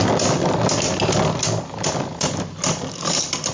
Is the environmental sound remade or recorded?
recorded